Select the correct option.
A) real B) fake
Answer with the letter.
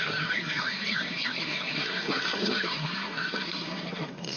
B